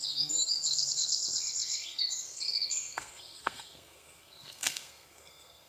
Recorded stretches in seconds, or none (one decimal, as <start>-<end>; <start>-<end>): none